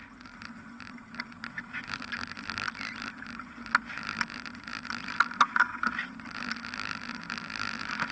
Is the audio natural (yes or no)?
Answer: yes